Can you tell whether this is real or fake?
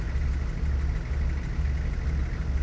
real